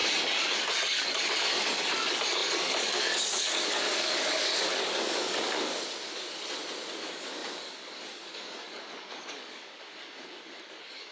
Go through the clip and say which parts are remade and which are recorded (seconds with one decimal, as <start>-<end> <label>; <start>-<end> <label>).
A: 0.0-0.6 recorded; 0.6-5.7 remade; 5.7-6.9 recorded; 6.9-11.1 remade